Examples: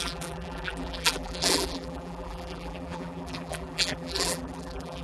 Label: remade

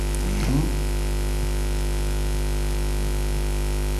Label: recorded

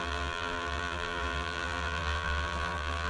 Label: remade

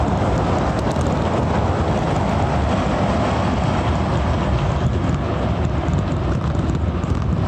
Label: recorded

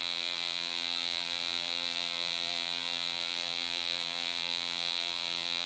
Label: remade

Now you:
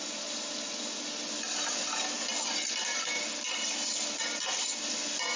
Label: recorded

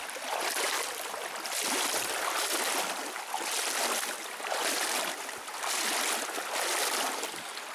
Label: recorded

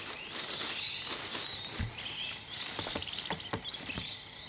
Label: recorded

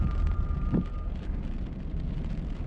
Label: remade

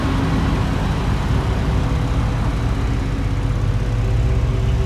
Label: recorded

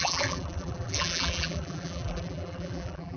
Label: remade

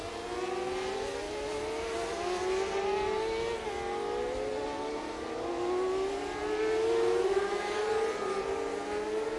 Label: recorded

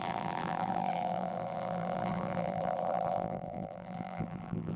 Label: remade